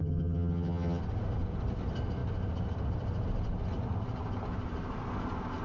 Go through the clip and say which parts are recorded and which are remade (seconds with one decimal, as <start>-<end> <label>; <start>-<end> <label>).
0.0-1.0 remade; 1.0-5.6 recorded